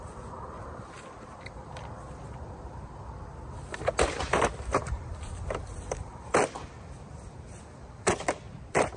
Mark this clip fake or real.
fake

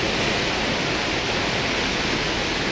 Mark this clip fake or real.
real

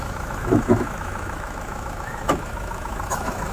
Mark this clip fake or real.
fake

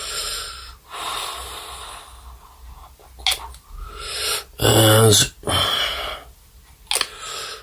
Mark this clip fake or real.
real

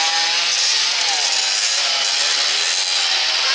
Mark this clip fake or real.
real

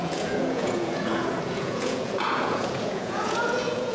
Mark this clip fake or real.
fake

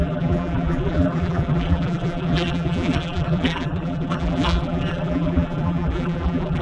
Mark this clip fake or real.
fake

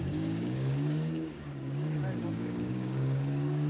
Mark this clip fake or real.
fake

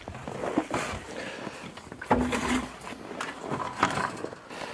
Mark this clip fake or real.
real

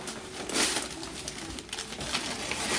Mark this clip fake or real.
real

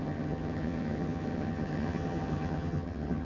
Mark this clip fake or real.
fake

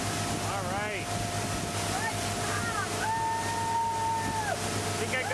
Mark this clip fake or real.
real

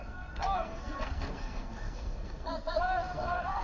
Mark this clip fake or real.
fake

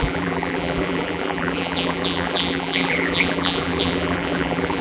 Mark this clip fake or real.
fake